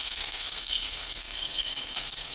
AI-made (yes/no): yes